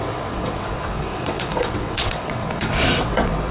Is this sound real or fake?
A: fake